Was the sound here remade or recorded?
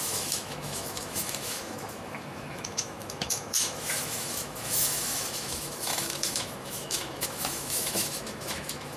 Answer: remade